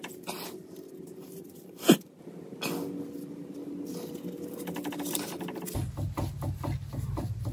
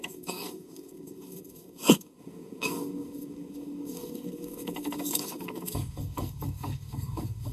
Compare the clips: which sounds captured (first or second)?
first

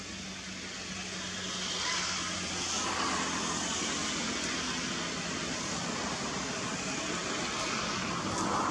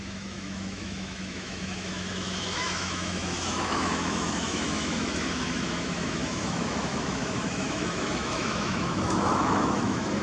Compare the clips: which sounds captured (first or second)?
first